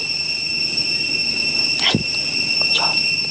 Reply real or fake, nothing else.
real